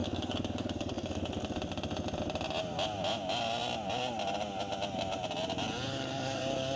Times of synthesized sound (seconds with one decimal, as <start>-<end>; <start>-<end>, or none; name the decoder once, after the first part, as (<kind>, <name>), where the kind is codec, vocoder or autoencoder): 0.0-1.2 (codec, DAC); 5.9-6.8